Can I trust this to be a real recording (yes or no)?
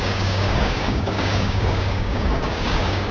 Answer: no